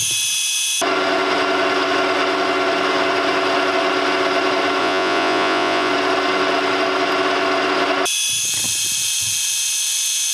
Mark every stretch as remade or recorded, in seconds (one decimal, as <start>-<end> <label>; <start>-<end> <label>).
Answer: 0.0-4.8 recorded; 4.8-5.9 remade; 5.9-10.3 recorded